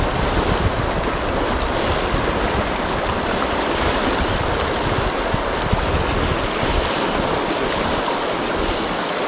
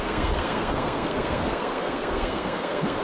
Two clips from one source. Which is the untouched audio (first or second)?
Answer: first